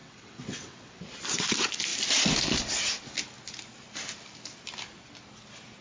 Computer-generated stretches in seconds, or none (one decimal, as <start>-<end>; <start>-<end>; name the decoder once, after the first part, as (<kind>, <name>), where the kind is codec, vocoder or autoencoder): 0.0-1.0 (vocoder, WaveNeXt)